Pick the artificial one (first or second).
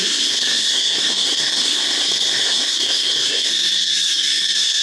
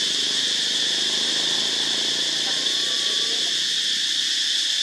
first